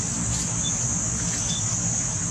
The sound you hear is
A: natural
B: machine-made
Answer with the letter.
A